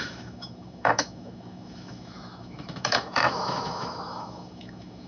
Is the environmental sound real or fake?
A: fake